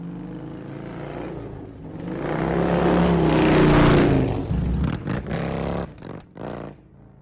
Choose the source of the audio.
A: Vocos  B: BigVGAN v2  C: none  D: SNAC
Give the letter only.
C